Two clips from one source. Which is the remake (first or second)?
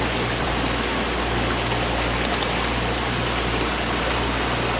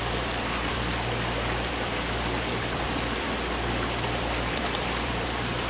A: second